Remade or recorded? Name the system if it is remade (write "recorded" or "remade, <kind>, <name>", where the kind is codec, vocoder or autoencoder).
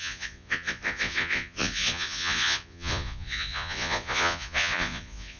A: remade, vocoder, Vocos